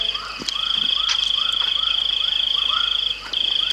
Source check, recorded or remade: recorded